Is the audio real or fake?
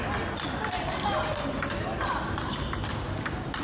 real